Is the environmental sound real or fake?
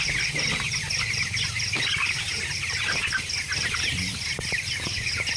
real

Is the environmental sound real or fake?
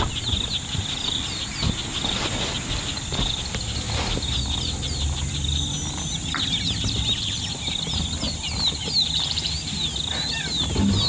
real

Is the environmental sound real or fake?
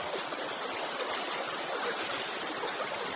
real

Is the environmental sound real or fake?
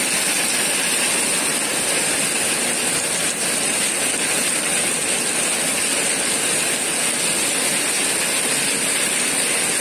real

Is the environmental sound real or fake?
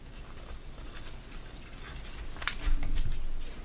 real